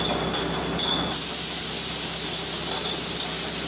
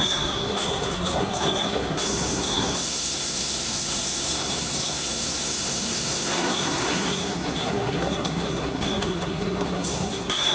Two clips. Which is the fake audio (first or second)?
second